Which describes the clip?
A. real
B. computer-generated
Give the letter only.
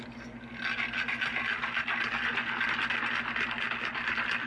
A